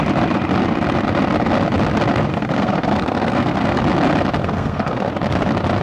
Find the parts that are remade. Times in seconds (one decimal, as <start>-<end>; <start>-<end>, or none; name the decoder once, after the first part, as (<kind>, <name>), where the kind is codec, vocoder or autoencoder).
2.3-3.8 (codec, SNAC); 4.4-5.1

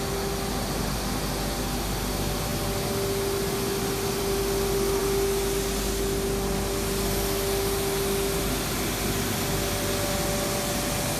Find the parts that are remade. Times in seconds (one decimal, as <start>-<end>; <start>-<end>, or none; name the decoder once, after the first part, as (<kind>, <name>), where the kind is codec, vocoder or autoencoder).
none

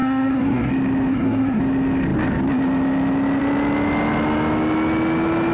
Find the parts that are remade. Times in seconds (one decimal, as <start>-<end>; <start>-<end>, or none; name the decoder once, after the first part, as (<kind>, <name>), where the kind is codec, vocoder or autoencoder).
0.0-0.7 (codec, SNAC); 1.1-1.6

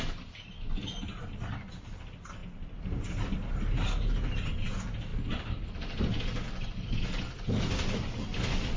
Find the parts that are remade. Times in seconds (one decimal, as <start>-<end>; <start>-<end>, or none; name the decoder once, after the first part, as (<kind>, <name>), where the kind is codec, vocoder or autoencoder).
none

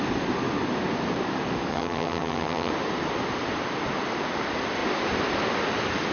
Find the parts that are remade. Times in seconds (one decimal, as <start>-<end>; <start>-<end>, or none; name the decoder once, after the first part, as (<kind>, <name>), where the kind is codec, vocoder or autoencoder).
1.7-2.7 (vocoder, HiFi-GAN)

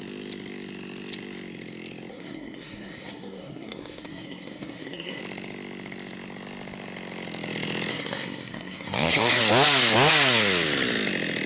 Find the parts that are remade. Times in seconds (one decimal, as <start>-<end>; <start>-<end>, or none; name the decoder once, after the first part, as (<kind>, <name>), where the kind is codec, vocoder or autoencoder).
2.1-5.2 (codec, SNAC); 7.9-9.4

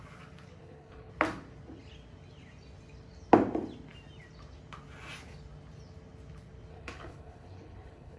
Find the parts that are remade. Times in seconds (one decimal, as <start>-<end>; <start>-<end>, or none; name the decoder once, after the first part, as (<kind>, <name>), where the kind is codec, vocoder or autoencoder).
0.6-1.1 (codec, HILCodec); 6.7-8.2